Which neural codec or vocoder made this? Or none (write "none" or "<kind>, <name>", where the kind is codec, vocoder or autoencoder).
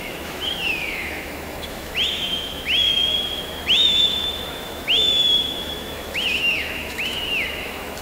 autoencoder, DAC-VAE